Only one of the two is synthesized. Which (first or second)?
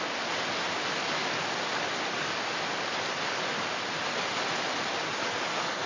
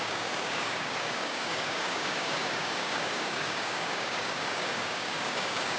second